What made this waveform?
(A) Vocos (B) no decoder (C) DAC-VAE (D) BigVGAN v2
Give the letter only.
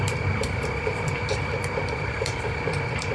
D